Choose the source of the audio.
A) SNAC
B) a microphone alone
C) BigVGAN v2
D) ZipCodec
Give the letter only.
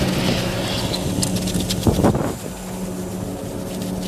B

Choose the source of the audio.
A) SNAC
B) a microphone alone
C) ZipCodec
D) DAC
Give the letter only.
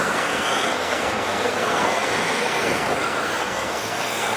A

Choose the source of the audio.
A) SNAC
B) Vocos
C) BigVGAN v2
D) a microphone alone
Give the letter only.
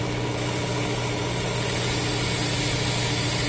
D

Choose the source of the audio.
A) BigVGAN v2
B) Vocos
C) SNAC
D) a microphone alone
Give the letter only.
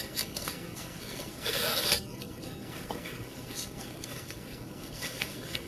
C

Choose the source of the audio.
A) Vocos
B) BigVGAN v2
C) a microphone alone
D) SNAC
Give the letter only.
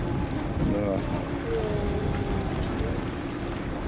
C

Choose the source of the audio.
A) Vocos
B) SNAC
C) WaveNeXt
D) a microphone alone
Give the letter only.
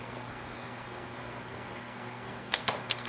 B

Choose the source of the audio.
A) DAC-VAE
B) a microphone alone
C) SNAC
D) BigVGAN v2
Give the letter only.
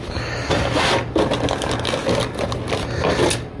B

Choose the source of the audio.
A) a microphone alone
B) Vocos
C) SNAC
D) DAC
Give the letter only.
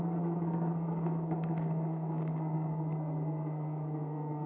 C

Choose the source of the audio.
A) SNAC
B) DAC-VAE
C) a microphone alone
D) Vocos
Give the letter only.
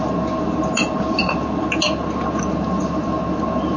C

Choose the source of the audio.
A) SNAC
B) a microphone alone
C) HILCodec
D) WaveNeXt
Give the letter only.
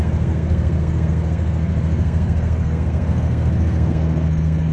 A